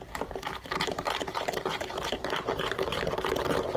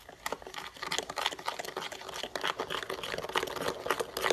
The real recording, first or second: second